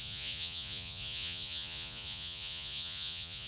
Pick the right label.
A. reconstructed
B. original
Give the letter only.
A